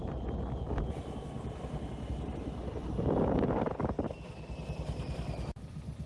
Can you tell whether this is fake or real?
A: real